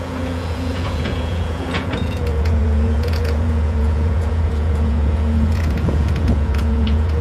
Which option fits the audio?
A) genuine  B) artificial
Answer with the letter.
B